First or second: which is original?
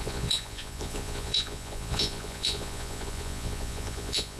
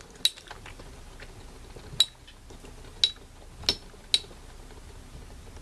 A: second